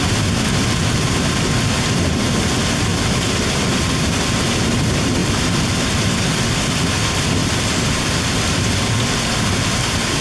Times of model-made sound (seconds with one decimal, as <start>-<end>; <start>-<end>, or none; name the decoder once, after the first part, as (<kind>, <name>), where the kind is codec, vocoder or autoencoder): 2.9-4.4 (vocoder, BigVGAN v2); 5.2-6.7; 7.4-10.2